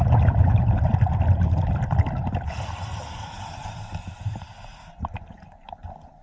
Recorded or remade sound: recorded